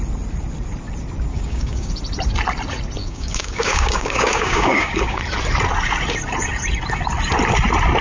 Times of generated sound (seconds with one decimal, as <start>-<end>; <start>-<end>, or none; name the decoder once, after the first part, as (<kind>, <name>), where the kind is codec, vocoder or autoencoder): 1.3-1.9 (codec, DAC); 3.0-5.2